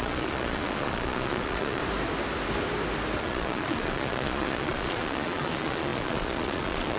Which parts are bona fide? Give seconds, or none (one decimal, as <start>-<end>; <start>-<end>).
1.8-3.2